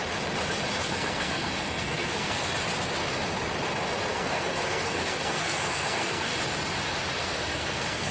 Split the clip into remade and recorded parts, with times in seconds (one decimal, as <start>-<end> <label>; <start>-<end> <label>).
0.0-0.8 recorded; 0.8-2.5 remade; 2.5-4.1 recorded; 4.1-6.3 remade; 6.3-7.2 recorded; 7.2-8.1 remade